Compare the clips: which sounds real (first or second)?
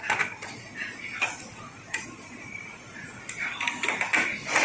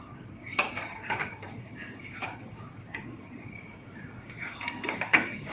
first